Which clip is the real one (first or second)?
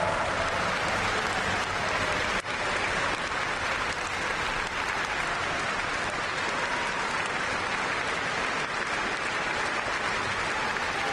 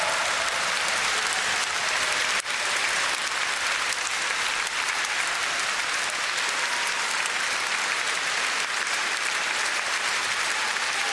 first